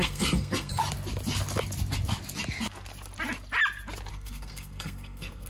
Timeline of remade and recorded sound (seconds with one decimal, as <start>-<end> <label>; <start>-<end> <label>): 0.0-0.8 remade; 0.8-4.1 recorded; 4.1-5.5 remade